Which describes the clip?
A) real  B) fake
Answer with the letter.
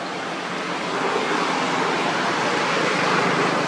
A